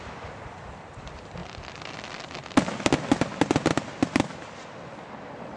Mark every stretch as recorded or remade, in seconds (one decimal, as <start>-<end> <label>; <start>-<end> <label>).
0.0-5.6 recorded